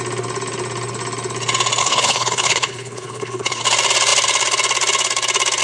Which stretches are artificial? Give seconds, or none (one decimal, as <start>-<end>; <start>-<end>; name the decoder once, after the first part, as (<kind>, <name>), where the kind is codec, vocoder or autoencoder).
1.8-3.6 (codec, HILCodec)